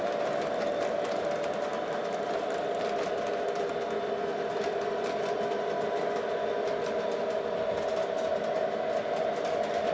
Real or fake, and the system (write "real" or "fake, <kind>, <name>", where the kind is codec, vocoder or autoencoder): real